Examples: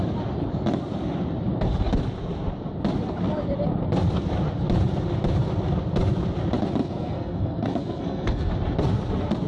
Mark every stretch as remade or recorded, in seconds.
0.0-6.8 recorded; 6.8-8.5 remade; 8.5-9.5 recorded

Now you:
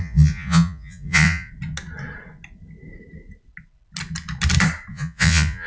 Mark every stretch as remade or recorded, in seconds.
0.0-1.5 remade; 1.5-4.9 recorded; 4.9-5.7 remade

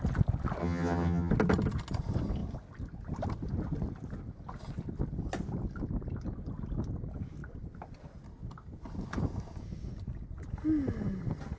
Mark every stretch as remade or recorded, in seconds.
0.0-0.6 recorded; 0.6-1.3 remade; 1.3-11.6 recorded

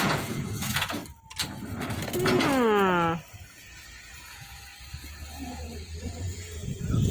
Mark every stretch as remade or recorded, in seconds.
0.0-1.0 remade; 1.0-3.3 recorded; 3.3-4.7 remade; 4.7-6.0 recorded; 6.0-7.1 remade